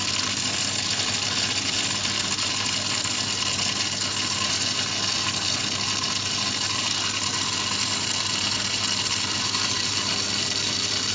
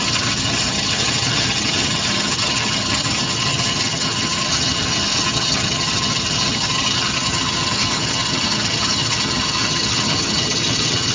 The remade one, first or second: second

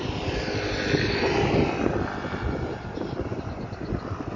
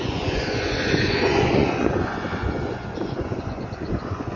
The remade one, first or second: second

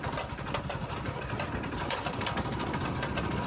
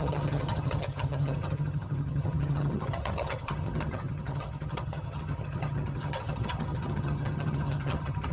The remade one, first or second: second